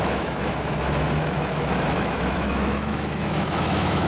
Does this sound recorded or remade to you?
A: remade